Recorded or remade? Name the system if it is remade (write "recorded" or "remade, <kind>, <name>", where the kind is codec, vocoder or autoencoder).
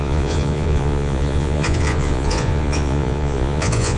remade, vocoder, Vocos